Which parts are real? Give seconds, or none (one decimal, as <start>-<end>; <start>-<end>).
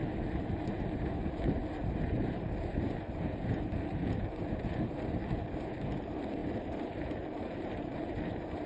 none